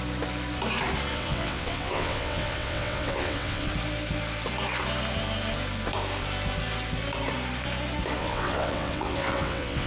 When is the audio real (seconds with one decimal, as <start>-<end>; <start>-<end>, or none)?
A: 0.0-1.1; 3.7-8.2

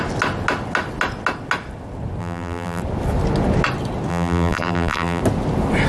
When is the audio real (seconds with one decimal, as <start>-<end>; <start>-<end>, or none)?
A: 0.0-2.2; 2.8-4.1; 5.2-5.9

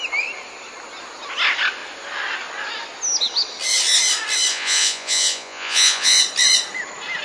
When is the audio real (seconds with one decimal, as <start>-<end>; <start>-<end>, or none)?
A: 0.0-4.5; 6.2-7.2

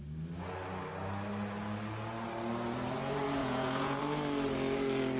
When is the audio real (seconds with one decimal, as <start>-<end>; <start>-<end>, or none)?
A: 0.0-3.4; 4.0-5.2

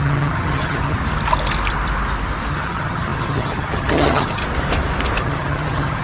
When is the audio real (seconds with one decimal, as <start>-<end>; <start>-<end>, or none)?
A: 1.0-2.5; 4.4-5.2

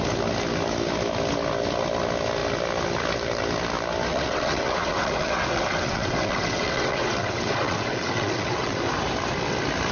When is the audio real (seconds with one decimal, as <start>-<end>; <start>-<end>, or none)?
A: 0.0-4.1; 8.8-9.9

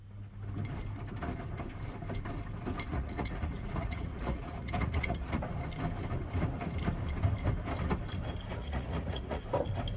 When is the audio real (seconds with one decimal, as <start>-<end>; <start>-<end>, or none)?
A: 0.0-2.9; 5.4-8.5; 9.4-10.0

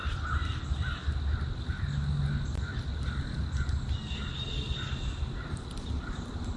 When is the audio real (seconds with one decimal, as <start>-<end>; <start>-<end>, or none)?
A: 0.0-6.6